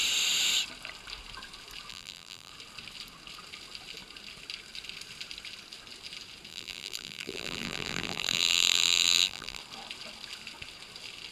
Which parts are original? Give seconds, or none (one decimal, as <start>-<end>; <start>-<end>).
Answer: 0.0-1.9; 2.5-6.5; 9.6-11.3